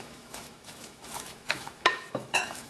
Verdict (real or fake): fake